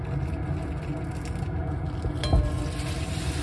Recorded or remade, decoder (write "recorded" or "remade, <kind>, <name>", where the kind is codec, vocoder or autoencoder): recorded